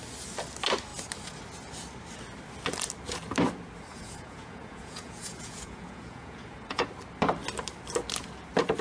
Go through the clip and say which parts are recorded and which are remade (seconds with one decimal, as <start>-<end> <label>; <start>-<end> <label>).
0.0-3.9 recorded; 3.9-6.9 remade; 6.9-8.8 recorded